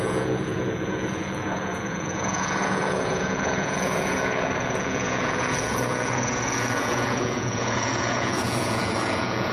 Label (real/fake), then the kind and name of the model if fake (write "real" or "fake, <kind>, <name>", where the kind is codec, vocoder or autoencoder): fake, vocoder, Vocos